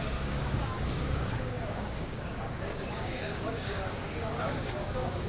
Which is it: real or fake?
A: fake